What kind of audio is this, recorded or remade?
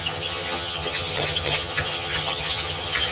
remade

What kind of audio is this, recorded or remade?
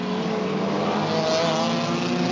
recorded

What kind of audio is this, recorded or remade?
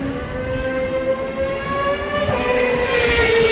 recorded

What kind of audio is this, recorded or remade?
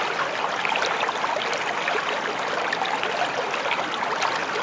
recorded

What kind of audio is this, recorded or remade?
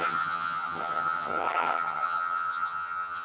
remade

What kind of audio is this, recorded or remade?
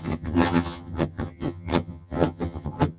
remade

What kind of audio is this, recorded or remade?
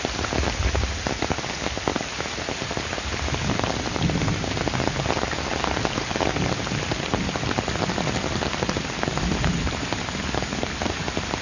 recorded